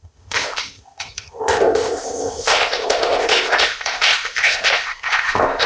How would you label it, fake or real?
fake